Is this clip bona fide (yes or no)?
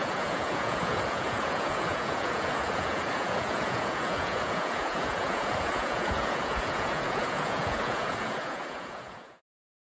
no